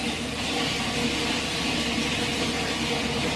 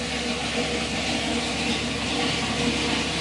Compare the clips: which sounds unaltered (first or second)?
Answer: second